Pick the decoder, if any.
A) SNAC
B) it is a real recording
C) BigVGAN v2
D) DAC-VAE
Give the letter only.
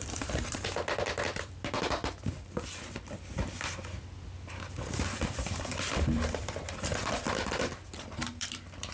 C